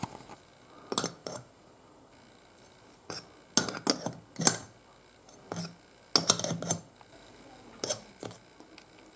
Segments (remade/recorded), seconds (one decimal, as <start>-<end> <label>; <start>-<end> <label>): 0.0-1.2 recorded; 1.2-2.0 remade; 2.0-9.2 recorded